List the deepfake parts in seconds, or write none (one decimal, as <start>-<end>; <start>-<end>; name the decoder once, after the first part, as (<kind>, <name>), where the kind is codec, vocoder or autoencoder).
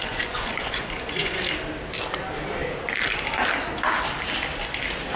0.0-1.4 (vocoder, Vocos)